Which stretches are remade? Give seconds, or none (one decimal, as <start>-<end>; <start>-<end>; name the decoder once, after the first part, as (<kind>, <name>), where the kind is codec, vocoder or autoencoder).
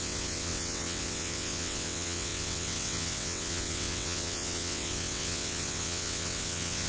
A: 0.0-6.9 (vocoder, WaveNeXt)